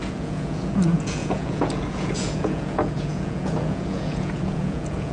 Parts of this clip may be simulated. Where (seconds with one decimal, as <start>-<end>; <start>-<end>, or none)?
0.0-5.1